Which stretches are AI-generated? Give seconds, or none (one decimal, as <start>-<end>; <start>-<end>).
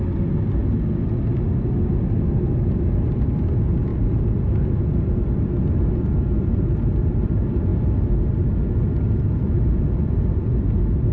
0.0-0.6; 2.1-7.7; 9.1-11.1